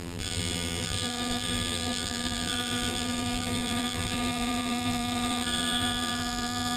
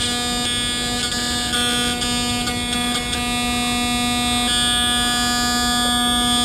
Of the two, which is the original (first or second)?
second